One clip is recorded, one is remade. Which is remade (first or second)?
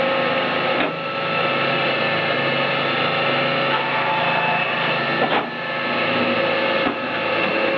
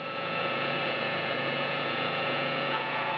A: second